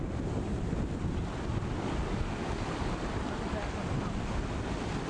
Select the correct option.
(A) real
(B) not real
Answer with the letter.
A